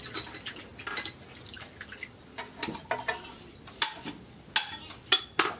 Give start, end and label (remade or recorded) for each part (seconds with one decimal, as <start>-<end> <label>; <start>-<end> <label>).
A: 0.0-5.6 recorded